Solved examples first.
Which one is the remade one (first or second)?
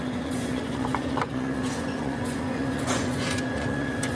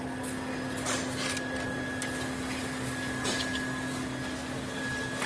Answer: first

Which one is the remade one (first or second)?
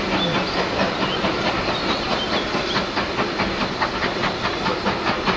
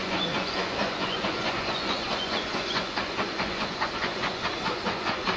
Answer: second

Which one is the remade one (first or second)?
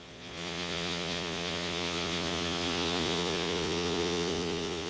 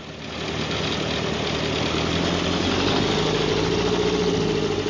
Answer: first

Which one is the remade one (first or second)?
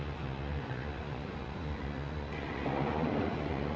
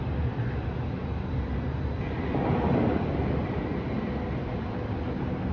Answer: first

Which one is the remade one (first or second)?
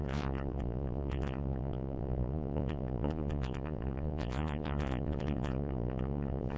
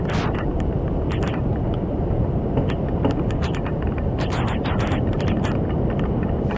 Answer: first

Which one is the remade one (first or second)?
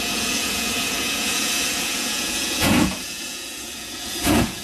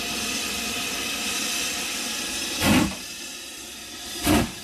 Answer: first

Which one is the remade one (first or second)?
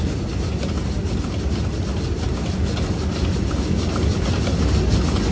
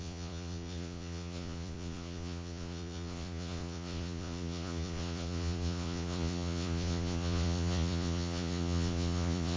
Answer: second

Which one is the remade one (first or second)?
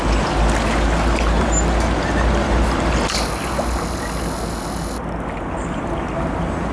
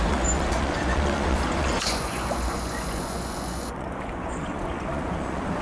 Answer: second